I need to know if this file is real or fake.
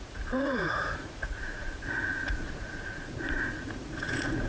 fake